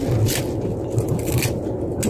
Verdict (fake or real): real